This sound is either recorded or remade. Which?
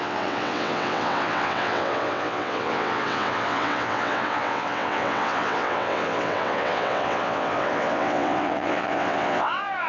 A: remade